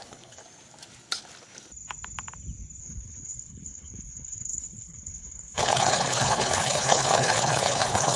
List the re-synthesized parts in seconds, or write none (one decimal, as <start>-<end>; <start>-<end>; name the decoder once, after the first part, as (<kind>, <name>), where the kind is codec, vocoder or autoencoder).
0.0-0.4 (codec, HILCodec); 2.8-8.2